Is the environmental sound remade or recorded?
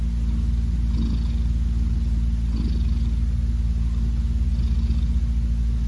recorded